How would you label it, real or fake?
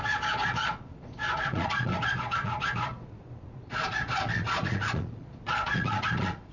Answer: fake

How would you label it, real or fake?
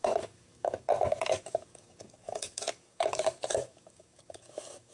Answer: fake